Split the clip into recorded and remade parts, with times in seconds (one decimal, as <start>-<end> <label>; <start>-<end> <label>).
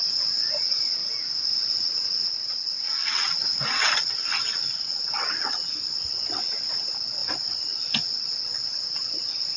0.0-1.0 remade; 1.0-1.6 recorded; 1.6-9.6 remade